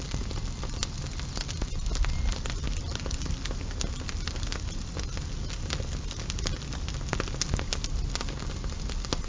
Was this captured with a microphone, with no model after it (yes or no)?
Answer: yes